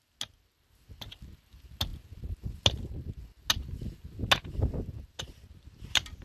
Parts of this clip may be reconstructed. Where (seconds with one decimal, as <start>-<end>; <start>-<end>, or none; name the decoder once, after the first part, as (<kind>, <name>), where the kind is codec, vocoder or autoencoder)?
none